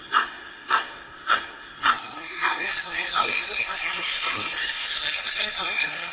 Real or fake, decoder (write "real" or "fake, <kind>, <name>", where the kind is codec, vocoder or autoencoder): fake, codec, SNAC